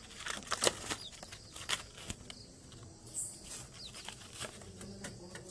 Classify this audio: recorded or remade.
recorded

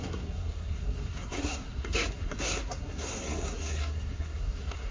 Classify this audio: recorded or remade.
remade